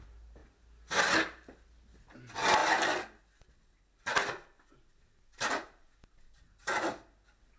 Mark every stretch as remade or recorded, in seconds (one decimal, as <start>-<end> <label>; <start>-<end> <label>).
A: 0.0-7.6 recorded